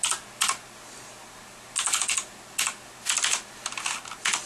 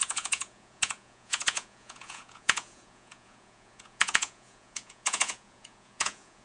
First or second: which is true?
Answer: first